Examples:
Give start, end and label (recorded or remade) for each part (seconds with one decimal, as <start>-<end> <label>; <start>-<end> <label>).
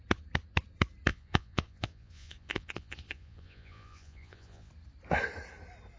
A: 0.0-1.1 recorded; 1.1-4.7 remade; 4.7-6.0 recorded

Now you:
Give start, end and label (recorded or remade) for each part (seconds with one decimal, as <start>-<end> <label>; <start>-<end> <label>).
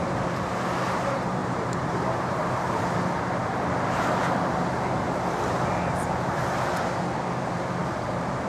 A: 0.0-1.4 recorded; 1.4-2.8 remade; 2.8-6.4 recorded; 6.4-7.0 remade; 7.0-7.8 recorded; 7.8-8.5 remade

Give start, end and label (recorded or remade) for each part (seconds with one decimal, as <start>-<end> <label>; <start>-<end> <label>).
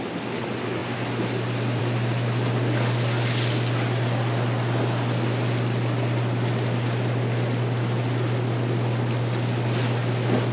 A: 0.0-10.5 recorded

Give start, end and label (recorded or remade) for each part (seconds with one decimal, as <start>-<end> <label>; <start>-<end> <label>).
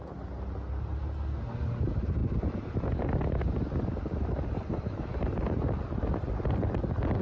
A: 0.0-7.2 recorded